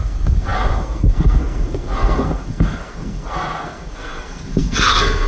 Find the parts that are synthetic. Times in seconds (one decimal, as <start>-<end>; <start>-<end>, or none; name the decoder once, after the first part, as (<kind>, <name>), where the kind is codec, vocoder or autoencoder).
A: 0.0-5.3 (codec, SNAC)